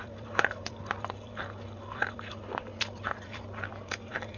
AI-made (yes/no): yes